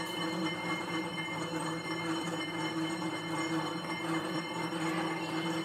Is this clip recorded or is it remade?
remade